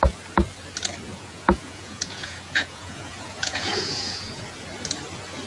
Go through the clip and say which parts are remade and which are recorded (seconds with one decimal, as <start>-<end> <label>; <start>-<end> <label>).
0.0-1.1 recorded; 1.1-4.4 remade; 4.4-5.5 recorded